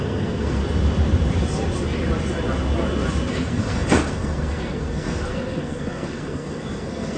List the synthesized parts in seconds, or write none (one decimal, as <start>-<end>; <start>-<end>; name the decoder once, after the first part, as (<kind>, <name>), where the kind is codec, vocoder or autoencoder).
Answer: 0.0-0.6 (codec, SNAC); 3.3-7.2